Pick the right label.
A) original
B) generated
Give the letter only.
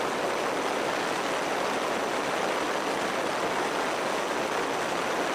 A